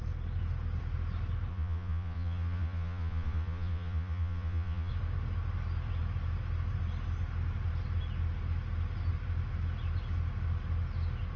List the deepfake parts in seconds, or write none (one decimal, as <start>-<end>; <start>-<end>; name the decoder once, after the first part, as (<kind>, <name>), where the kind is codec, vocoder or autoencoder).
1.5-4.9 (vocoder, Vocos)